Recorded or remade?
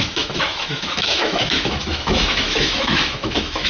remade